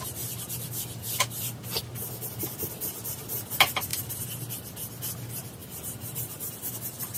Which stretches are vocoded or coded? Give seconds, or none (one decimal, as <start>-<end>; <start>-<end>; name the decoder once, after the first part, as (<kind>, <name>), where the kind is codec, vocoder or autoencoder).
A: 5.6-6.3 (vocoder, BigVGAN v2)